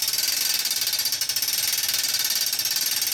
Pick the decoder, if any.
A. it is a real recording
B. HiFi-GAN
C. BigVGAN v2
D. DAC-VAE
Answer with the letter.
A